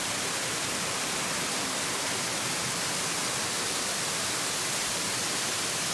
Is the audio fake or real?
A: real